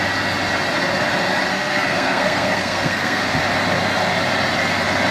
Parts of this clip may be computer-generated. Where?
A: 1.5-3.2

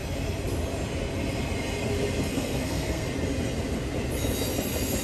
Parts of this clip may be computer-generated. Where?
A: 2.3-3.1

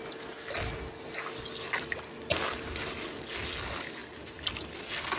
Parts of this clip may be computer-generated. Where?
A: none

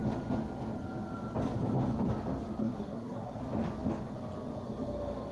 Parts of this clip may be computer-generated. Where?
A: 2.6-3.4

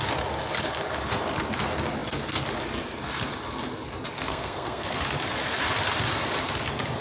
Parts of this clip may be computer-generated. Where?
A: 4.3-4.9